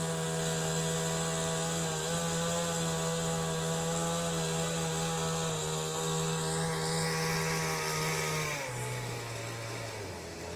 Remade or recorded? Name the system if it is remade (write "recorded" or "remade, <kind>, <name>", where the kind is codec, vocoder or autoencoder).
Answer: recorded